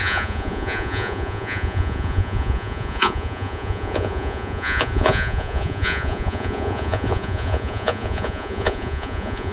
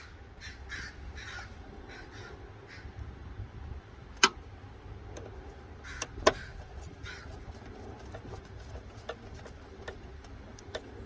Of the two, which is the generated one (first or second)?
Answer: first